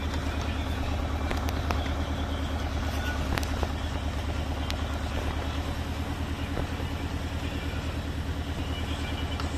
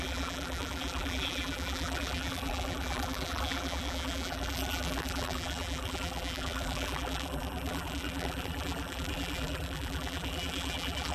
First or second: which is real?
first